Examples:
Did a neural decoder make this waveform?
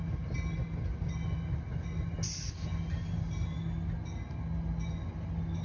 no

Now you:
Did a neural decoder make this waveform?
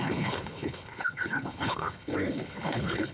yes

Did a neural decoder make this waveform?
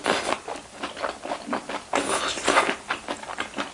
no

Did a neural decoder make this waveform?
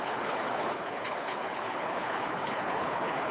yes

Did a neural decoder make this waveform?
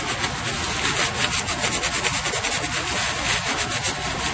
no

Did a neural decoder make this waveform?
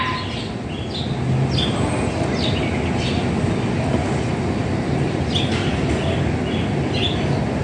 no